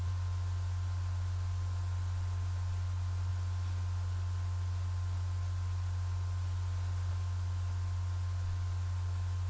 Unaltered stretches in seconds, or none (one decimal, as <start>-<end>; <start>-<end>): 0.0-9.5